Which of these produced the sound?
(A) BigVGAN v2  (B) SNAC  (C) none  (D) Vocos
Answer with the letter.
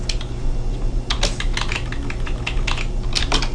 C